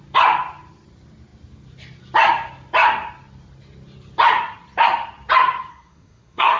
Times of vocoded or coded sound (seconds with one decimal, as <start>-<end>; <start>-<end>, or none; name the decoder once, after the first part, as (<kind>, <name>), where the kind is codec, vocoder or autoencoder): 5.7-6.6 (codec, SNAC)